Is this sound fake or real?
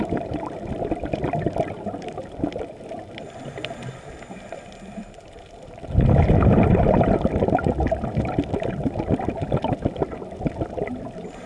fake